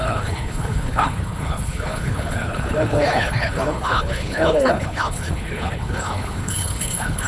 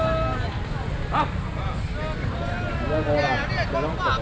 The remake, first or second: first